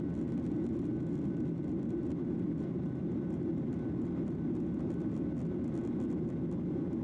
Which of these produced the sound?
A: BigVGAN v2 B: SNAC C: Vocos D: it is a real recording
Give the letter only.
D